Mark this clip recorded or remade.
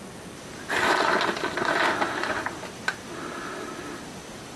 recorded